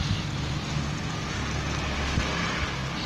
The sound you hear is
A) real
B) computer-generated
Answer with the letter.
A